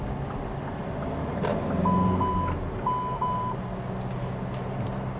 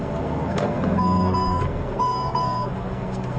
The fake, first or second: second